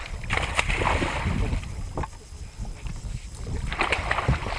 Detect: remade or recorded recorded